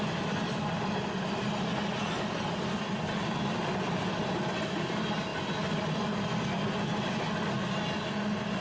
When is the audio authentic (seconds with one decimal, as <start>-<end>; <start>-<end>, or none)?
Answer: 0.0-8.6